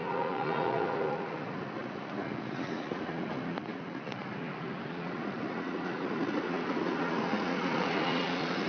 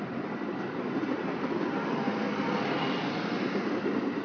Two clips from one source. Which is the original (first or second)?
second